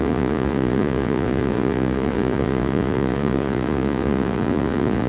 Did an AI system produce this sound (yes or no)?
yes